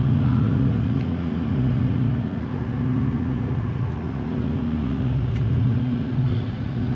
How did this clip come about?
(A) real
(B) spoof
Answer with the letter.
B